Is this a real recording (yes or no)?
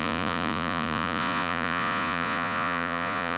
no